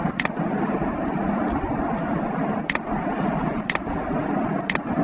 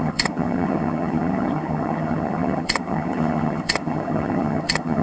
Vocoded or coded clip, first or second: second